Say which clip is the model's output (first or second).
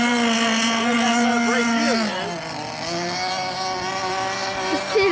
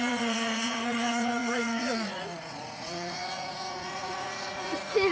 second